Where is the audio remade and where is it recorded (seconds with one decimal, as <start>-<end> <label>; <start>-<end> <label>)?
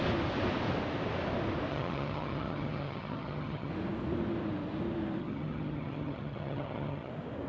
0.0-1.7 recorded; 1.7-3.7 remade; 3.7-5.2 recorded; 5.2-7.1 remade; 7.1-7.5 recorded